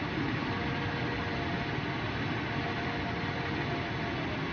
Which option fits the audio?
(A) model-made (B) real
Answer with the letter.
B